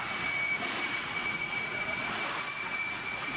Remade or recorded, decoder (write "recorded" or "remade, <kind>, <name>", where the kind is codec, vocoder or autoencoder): remade, vocoder, Vocos